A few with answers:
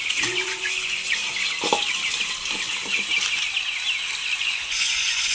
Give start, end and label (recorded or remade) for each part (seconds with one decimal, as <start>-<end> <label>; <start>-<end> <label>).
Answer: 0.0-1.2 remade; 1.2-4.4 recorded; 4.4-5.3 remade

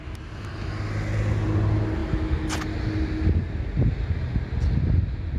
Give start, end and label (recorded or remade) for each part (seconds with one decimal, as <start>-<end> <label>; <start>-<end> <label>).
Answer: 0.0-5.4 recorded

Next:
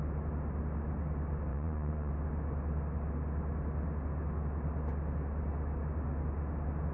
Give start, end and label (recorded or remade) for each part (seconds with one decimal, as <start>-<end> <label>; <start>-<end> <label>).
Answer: 0.0-1.5 recorded; 1.5-2.1 remade; 2.1-6.9 recorded